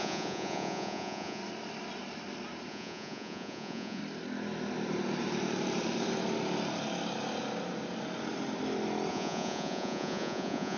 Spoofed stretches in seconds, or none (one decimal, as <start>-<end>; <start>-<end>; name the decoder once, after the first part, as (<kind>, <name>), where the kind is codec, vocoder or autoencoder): 0.0-1.4 (vocoder, Vocos); 2.7-4.0; 9.1-10.8